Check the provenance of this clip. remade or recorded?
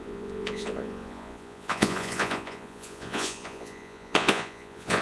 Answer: remade